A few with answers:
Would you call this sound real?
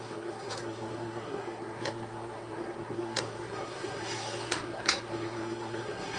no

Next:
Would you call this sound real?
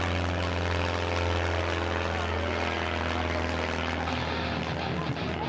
yes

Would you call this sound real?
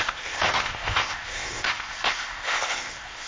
no